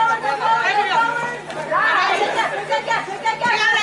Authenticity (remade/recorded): recorded